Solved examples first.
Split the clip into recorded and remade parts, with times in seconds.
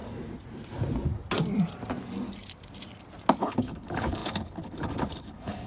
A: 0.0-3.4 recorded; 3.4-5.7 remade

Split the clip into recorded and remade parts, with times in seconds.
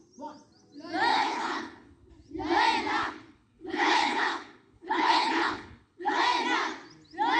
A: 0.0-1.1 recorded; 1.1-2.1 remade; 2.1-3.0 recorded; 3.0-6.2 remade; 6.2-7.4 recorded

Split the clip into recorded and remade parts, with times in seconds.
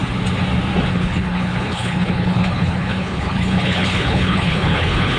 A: 0.0-0.9 recorded; 0.9-5.2 remade